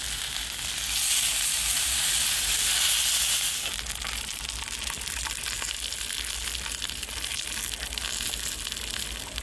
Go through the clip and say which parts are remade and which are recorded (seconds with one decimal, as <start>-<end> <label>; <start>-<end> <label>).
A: 0.0-1.3 recorded; 1.3-2.9 remade; 2.9-9.4 recorded